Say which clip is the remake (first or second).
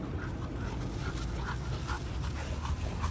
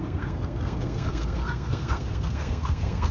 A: second